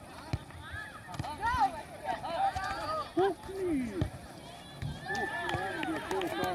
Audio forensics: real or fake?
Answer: real